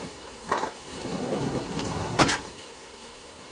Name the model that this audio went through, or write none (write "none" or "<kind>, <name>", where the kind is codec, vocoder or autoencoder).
codec, SNAC